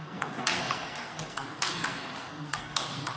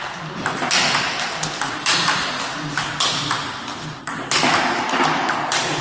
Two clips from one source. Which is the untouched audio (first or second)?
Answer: second